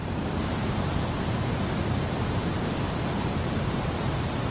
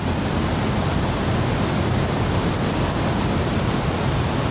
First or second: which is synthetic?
first